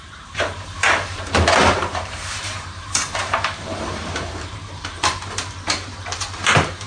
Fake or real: fake